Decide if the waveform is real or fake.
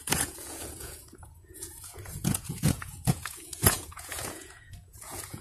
fake